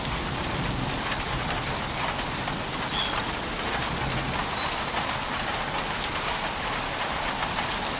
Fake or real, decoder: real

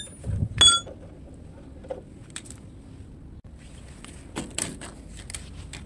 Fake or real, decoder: real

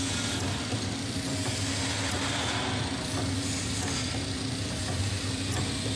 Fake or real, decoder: real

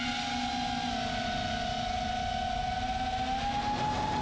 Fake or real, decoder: real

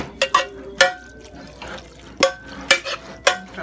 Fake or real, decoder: real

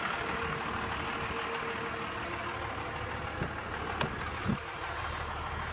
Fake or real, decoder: real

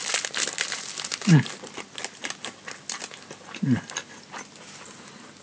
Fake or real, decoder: real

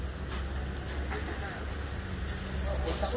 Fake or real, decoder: real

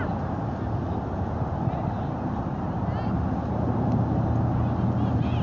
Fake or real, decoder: real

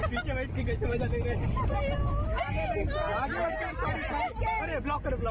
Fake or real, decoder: real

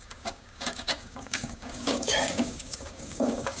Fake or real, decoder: fake, codec, DAC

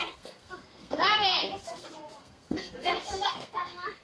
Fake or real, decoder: fake, codec, SNAC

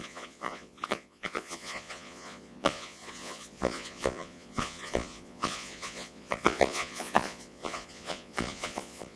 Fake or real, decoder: fake, vocoder, Vocos